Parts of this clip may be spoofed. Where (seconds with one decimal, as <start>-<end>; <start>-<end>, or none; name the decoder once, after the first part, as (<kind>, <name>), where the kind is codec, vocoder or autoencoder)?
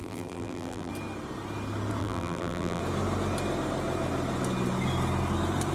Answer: 0.0-0.9 (vocoder, BigVGAN v2); 2.0-2.8